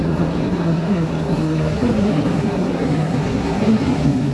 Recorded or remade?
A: remade